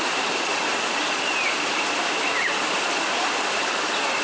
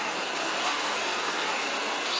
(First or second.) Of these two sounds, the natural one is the first